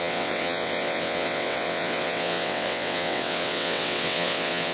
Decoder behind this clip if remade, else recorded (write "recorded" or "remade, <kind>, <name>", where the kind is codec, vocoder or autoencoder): remade, vocoder, WaveNeXt